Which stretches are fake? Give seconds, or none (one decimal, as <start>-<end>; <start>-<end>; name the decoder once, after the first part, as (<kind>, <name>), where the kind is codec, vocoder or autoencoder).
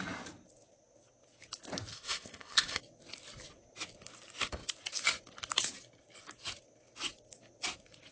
1.9-2.8 (codec, ZipCodec)